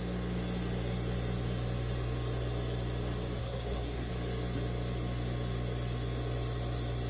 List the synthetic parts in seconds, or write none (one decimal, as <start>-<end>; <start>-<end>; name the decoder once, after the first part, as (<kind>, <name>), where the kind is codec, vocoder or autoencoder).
3.4-4.1 (codec, SNAC)